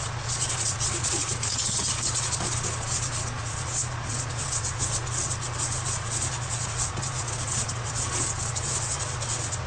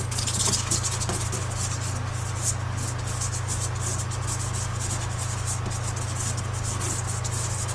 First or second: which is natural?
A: second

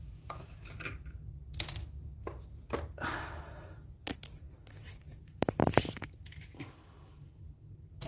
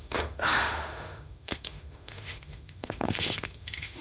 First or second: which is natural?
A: first